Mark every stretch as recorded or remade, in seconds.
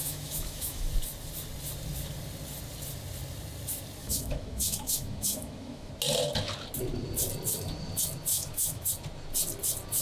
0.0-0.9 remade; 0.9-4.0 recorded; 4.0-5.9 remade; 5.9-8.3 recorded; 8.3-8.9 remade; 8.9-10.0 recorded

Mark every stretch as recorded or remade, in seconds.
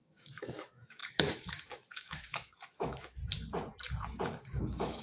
0.0-3.2 remade; 3.2-4.4 recorded; 4.4-5.0 remade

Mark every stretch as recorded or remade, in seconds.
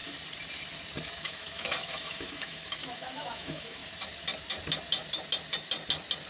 0.0-1.2 recorded; 1.2-3.8 remade; 3.8-6.3 recorded